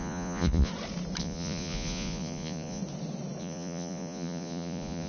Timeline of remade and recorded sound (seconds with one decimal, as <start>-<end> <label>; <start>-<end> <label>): 0.0-0.7 remade; 0.7-1.2 recorded; 1.2-2.8 remade; 2.8-3.4 recorded; 3.4-5.1 remade